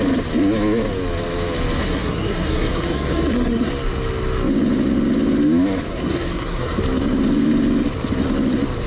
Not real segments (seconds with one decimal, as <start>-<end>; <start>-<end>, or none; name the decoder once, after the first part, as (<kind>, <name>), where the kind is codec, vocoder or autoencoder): 1.8-3.7 (codec, SNAC); 5.9-6.8

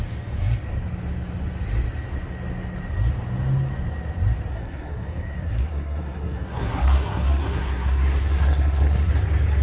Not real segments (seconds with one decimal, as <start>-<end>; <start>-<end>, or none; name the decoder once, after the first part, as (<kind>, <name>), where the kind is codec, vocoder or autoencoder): 4.5-9.1 (codec, SNAC)

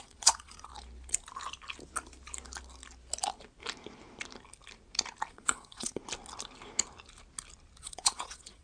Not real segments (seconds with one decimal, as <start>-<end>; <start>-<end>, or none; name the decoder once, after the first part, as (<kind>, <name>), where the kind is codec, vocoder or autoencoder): 0.0-0.7 (vocoder, Vocos); 5.3-6.0; 7.8-8.6